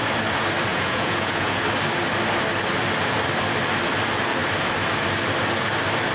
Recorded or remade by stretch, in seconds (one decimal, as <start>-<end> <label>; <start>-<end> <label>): 0.0-0.7 recorded; 0.7-1.6 remade; 1.6-6.1 recorded